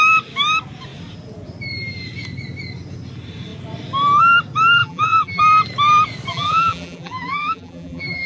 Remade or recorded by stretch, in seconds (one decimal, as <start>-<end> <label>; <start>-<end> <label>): 0.0-4.8 recorded; 4.8-5.4 remade; 5.4-6.3 recorded; 6.3-8.3 remade